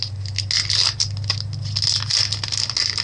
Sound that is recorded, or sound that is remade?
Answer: recorded